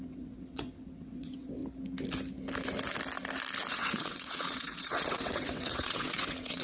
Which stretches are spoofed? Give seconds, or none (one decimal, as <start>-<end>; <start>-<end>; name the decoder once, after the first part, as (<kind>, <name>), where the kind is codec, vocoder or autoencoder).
0.0-1.6 (vocoder, WaveNeXt); 3.7-6.6